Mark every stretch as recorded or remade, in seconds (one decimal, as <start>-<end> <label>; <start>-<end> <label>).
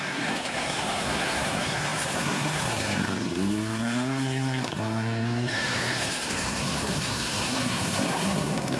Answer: 0.0-8.8 remade